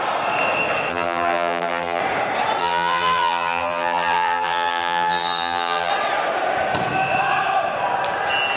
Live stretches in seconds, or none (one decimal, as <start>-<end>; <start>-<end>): 0.0-0.9; 2.0-2.6; 5.9-8.6